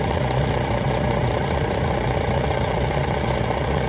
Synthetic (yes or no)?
yes